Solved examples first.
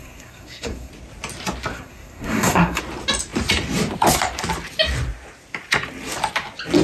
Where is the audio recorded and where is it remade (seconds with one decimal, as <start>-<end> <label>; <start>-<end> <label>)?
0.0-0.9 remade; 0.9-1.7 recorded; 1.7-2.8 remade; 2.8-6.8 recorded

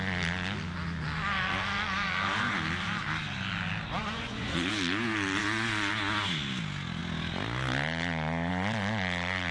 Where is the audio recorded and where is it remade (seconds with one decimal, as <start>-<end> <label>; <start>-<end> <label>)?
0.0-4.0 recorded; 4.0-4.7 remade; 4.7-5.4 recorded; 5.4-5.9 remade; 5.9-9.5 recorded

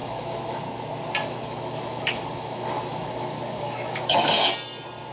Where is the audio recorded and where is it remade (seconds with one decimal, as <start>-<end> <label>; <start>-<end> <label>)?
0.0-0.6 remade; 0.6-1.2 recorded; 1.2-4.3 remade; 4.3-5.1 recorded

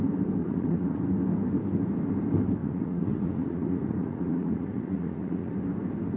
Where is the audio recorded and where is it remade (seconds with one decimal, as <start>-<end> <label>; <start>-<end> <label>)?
0.0-0.4 recorded; 0.4-1.0 remade; 1.0-2.6 recorded; 2.6-5.5 remade; 5.5-6.2 recorded

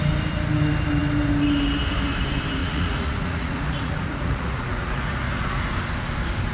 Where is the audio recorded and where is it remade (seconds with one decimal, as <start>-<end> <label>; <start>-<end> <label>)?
0.0-2.6 recorded; 2.6-5.6 remade; 5.6-6.5 recorded